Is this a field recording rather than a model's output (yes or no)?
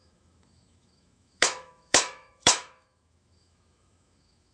no